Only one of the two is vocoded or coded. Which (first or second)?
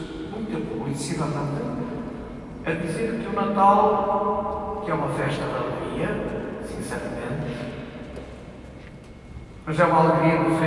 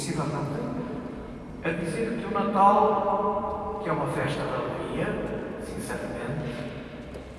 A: second